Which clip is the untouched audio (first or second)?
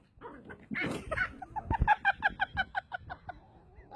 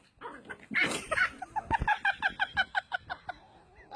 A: first